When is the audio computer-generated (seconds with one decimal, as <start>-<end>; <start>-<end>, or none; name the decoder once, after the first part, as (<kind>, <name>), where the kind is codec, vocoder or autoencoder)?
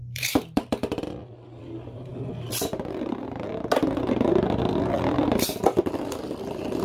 0.0-2.1 (vocoder, BigVGAN v2); 4.6-6.8